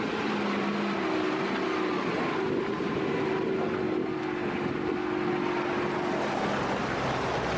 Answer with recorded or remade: recorded